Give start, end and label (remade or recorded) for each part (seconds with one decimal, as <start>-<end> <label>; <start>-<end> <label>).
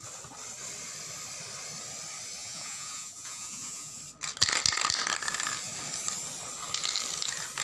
0.0-2.4 recorded; 2.4-4.0 remade; 4.0-7.6 recorded